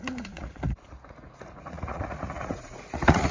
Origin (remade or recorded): remade